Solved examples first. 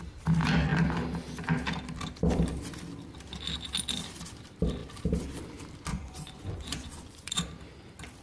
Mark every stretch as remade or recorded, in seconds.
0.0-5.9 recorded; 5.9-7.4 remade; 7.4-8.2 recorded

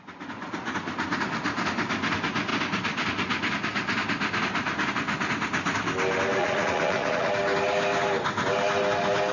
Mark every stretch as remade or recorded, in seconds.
0.0-6.4 recorded; 6.4-7.3 remade; 7.3-9.3 recorded

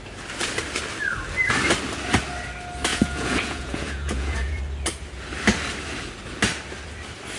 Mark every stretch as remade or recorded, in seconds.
0.0-2.9 recorded; 2.9-4.6 remade; 4.6-7.4 recorded

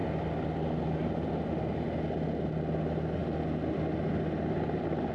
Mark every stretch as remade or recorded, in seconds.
0.0-5.1 recorded